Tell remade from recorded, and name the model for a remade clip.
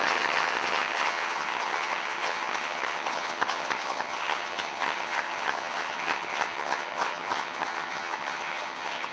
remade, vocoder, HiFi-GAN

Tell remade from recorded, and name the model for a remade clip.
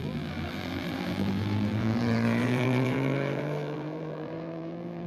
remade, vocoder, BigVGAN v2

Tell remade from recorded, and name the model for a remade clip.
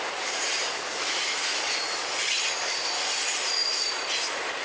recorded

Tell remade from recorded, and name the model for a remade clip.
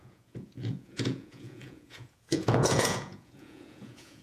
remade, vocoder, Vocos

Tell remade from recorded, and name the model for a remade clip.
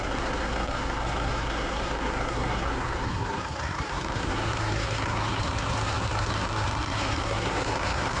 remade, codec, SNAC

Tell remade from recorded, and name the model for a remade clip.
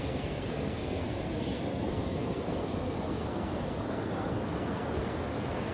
remade, codec, SNAC